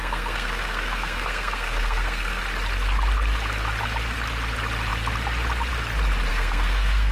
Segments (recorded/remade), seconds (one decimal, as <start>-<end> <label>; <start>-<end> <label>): 0.0-2.4 remade; 2.4-6.3 recorded; 6.3-7.1 remade